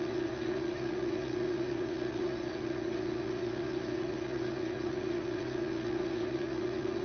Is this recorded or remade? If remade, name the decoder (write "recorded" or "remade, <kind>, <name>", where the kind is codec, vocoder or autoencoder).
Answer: remade, vocoder, Vocos